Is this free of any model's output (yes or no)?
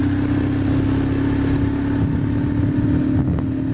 yes